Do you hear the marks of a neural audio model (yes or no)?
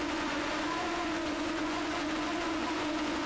yes